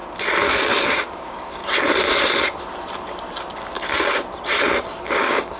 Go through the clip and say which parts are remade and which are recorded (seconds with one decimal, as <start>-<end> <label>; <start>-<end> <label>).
0.0-0.9 recorded; 0.9-1.6 remade; 1.6-5.0 recorded; 5.0-5.6 remade